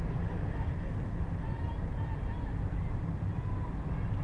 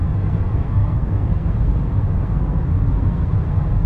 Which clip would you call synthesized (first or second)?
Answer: second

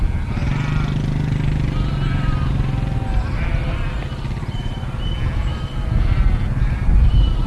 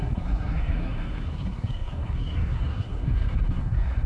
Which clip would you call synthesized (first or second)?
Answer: second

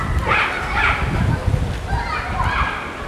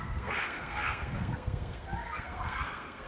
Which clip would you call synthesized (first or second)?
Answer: second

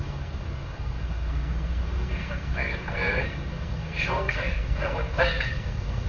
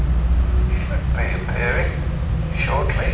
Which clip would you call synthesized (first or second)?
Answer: first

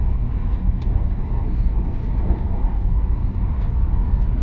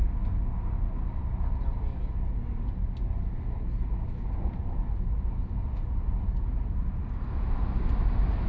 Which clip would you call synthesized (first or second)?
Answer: first